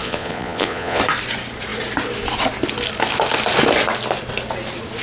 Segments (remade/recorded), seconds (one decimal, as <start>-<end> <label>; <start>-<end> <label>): 0.0-1.0 remade; 1.0-5.0 recorded